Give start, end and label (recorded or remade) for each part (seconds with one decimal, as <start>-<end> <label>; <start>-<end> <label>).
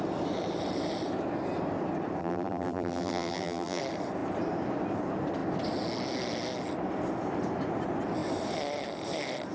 0.0-2.2 recorded; 2.2-3.8 remade; 3.8-9.5 recorded